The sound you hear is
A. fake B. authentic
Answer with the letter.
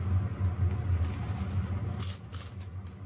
B